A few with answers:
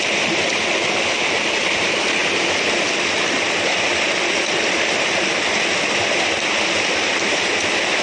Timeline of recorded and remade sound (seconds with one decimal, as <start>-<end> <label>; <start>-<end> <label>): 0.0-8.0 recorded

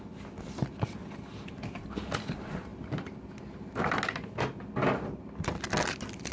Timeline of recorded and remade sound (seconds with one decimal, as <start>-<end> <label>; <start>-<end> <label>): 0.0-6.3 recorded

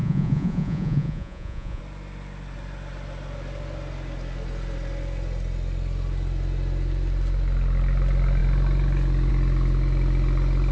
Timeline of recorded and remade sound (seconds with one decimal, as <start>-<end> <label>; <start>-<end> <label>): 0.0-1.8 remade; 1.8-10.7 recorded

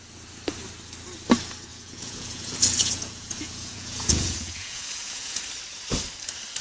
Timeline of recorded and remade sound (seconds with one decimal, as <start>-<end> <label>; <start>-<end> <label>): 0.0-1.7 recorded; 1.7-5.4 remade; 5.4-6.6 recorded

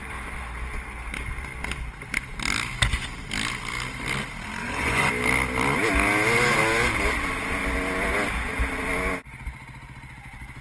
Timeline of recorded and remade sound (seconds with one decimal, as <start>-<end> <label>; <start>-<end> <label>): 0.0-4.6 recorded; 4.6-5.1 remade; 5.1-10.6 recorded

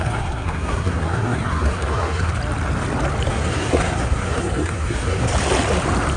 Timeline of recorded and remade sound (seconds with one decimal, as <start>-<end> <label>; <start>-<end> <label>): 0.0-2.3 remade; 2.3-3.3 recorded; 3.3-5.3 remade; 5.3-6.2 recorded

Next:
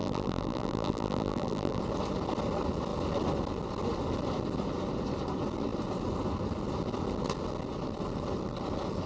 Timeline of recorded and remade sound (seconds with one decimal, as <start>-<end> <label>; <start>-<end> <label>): 0.0-1.8 remade; 1.8-9.1 recorded

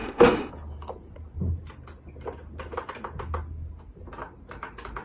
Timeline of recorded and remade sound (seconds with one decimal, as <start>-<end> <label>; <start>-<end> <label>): 0.0-0.5 remade; 0.5-5.0 recorded